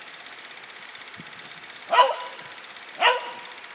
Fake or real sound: real